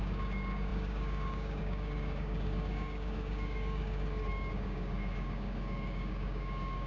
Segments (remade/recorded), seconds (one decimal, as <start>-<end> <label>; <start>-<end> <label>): 0.0-6.9 remade